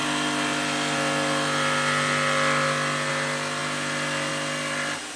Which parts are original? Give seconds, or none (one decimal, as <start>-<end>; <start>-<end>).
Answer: 0.0-5.2